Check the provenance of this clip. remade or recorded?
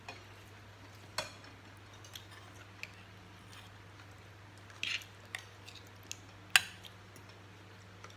recorded